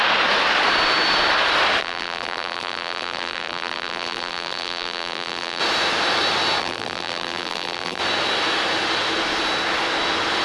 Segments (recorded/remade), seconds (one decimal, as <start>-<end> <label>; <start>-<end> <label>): 0.0-1.8 recorded; 1.8-5.6 remade; 5.6-6.6 recorded; 6.6-8.0 remade; 8.0-10.4 recorded